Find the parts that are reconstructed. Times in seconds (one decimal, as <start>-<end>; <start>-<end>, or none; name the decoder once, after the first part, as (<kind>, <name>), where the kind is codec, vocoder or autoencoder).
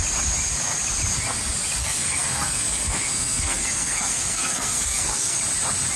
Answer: 1.8-5.4 (codec, SNAC)